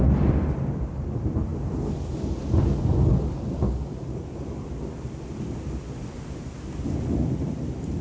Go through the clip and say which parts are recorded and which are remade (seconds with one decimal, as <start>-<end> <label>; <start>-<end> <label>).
0.0-8.0 recorded

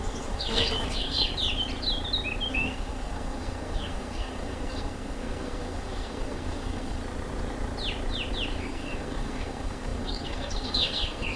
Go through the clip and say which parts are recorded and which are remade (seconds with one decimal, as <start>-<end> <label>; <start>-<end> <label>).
0.0-1.3 remade; 1.3-2.5 recorded; 2.5-7.0 remade; 7.0-8.6 recorded; 8.6-11.4 remade